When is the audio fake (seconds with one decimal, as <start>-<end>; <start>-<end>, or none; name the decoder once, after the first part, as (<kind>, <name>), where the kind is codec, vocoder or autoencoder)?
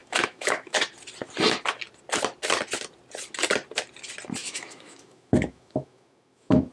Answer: 0.0-0.8 (autoencoder, DAC-VAE); 4.4-6.7